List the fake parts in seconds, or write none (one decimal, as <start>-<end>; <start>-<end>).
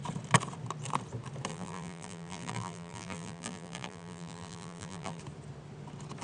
1.5-5.2